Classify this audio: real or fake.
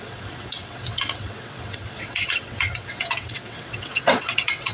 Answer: fake